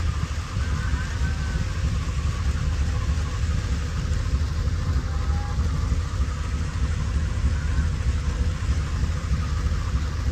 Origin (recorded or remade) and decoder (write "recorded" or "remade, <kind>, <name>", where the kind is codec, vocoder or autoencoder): recorded